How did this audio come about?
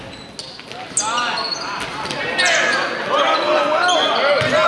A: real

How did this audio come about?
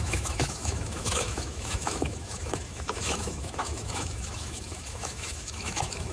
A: fake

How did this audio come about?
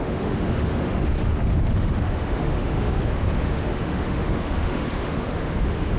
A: fake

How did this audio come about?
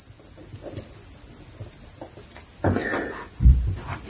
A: real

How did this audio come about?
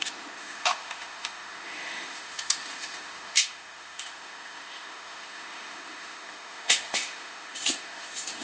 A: fake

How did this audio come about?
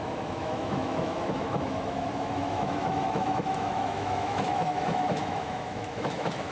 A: fake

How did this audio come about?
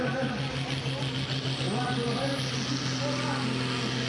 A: real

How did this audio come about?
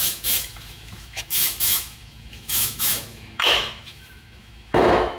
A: fake